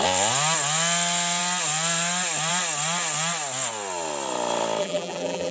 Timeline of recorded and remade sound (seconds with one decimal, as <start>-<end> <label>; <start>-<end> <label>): 0.0-4.8 recorded; 4.8-5.5 remade

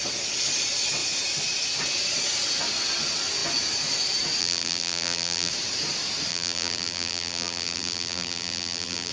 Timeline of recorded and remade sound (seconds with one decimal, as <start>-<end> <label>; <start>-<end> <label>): 0.0-4.4 recorded; 4.4-5.5 remade; 5.5-6.3 recorded; 6.3-9.1 remade

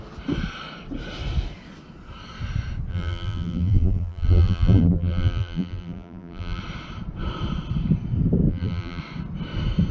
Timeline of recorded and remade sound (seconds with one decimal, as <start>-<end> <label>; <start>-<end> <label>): 0.0-2.9 recorded; 2.9-6.6 remade; 6.6-8.5 recorded; 8.5-9.0 remade; 9.0-9.9 recorded